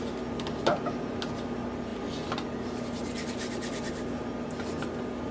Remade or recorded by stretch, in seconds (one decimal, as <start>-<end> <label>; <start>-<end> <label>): 0.0-5.3 recorded